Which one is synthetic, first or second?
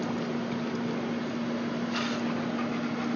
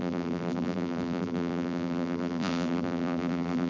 second